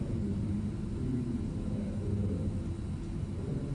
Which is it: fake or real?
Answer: real